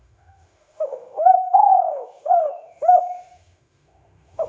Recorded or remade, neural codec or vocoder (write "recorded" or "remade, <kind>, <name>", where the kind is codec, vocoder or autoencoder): remade, autoencoder, DAC-VAE